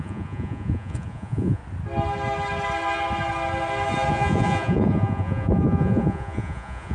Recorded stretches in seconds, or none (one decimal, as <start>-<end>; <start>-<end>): 1.6-4.1